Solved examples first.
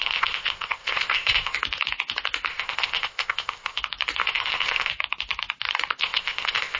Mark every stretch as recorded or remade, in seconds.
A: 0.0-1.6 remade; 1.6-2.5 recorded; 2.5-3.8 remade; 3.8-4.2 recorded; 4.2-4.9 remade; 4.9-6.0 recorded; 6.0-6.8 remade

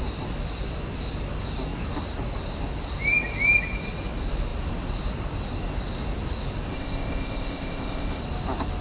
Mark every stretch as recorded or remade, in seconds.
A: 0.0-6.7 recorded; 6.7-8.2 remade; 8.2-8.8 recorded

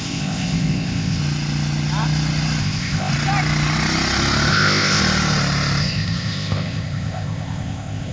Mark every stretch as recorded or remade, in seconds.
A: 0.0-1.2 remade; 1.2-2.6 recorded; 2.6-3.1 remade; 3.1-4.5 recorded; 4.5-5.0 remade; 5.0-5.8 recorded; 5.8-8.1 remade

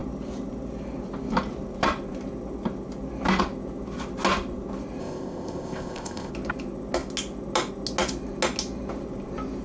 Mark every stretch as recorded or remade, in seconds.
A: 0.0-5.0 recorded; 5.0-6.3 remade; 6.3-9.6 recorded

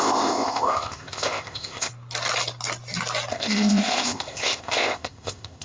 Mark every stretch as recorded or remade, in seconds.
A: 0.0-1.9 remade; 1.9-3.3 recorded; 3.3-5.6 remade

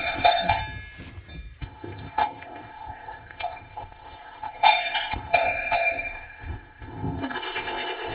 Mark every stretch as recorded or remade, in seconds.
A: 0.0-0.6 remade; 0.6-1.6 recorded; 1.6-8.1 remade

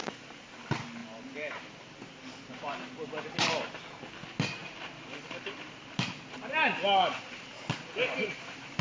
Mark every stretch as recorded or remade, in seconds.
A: 0.0-8.8 recorded

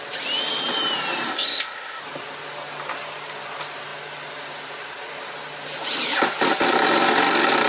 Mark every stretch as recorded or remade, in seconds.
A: 0.0-1.3 recorded; 1.3-2.0 remade; 2.0-7.7 recorded